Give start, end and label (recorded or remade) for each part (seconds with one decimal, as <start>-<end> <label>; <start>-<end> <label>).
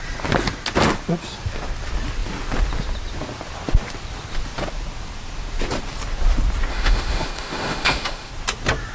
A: 0.0-6.7 recorded; 6.7-8.3 remade; 8.3-8.9 recorded